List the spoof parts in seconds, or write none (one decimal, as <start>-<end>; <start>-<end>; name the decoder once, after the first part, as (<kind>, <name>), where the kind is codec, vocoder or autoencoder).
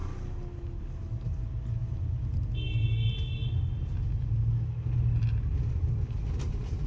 none